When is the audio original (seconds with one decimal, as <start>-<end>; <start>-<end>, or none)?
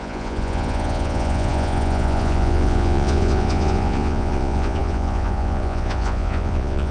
none